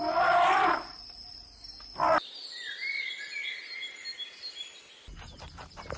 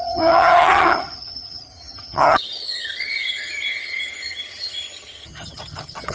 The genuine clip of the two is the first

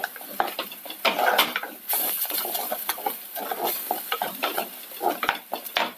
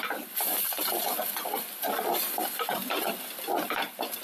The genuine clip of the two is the second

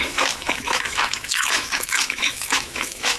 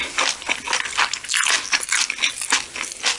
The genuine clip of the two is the second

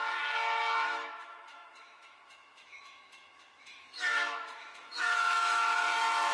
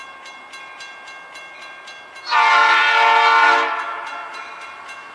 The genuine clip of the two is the second